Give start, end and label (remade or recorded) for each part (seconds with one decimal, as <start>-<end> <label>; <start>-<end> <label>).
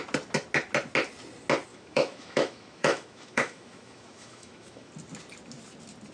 0.0-1.7 recorded; 1.7-4.9 remade; 4.9-6.1 recorded